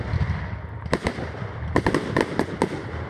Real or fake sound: real